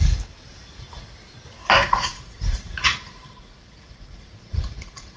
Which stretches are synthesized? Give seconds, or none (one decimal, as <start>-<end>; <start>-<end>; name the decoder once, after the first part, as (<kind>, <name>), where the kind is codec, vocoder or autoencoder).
1.8-5.2 (vocoder, Vocos)